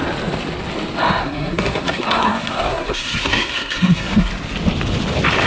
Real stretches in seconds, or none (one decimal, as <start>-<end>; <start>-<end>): 0.0-1.2; 4.3-5.5